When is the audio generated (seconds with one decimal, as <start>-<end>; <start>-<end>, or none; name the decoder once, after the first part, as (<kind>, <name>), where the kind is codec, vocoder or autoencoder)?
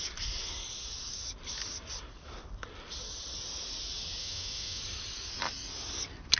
4.2-4.8 (autoencoder, DAC-VAE)